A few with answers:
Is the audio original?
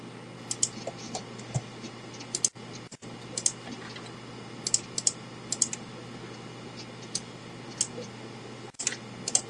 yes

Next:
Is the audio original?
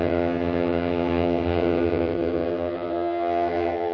no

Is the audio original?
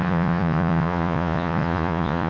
no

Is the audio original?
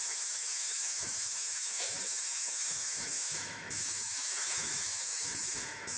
no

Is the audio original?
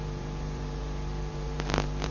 no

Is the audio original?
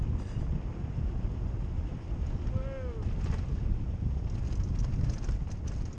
yes